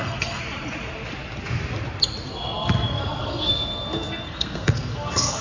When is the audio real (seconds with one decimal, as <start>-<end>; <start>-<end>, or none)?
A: 0.4-3.2